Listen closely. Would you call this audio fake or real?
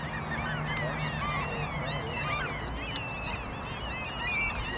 real